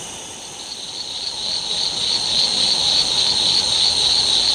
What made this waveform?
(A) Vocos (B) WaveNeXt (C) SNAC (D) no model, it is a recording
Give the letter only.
D